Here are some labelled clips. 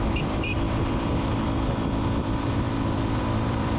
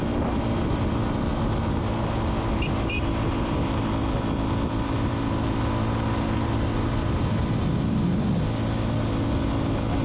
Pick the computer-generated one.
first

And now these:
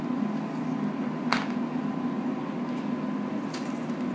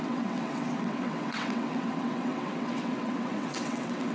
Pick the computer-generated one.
second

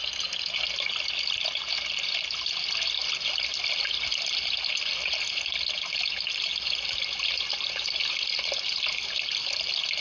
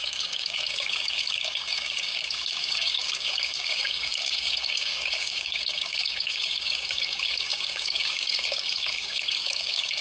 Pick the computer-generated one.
second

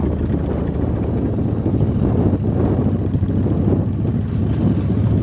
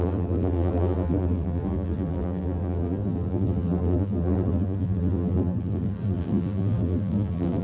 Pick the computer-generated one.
second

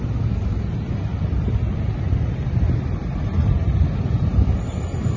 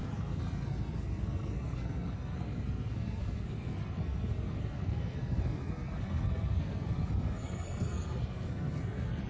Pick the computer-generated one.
second